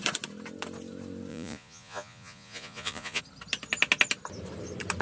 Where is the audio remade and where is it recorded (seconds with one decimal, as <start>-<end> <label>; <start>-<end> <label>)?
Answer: 0.0-1.3 recorded; 1.3-3.2 remade; 3.2-5.0 recorded

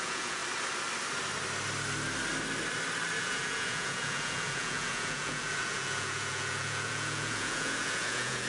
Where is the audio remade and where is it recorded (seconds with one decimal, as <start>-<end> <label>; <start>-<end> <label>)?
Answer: 0.0-0.4 remade; 0.4-3.2 recorded; 3.2-8.5 remade

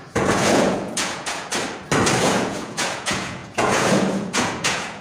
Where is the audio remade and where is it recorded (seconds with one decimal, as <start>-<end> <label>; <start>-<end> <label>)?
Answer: 0.0-1.5 remade; 1.5-2.2 recorded; 2.2-5.0 remade

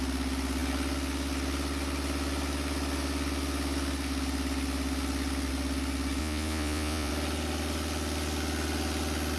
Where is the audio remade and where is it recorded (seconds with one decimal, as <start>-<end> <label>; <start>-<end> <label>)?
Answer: 0.0-6.2 recorded; 6.2-7.1 remade; 7.1-9.4 recorded